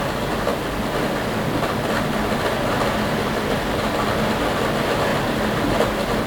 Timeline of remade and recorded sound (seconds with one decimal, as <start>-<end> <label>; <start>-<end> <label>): 0.0-6.3 recorded